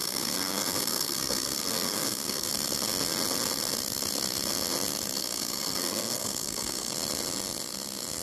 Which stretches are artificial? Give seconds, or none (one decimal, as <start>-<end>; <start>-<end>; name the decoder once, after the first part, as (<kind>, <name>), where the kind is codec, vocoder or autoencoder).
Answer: 0.0-2.5 (codec, SNAC); 5.2-6.9